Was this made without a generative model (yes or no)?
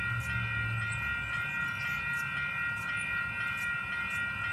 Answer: yes